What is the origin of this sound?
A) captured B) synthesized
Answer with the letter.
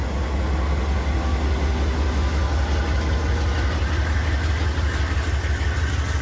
A